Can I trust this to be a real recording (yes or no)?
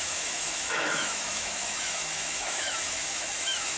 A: no